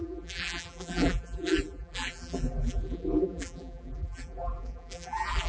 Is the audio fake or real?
fake